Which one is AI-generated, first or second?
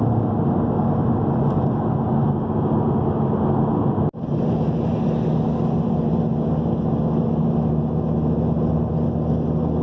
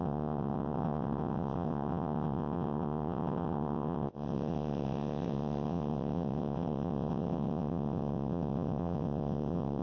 second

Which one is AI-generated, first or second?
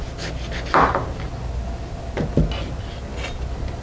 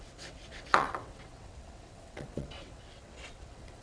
second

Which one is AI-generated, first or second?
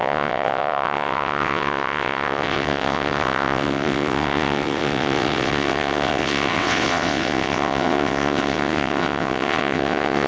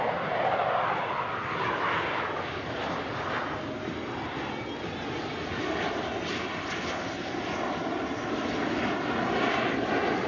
first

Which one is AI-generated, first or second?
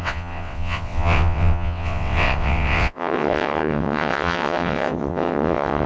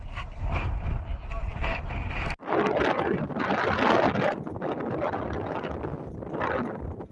first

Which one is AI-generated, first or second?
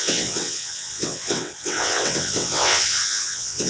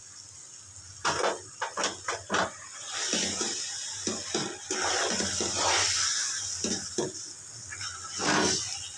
first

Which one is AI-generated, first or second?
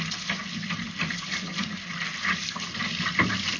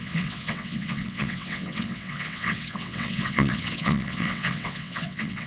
second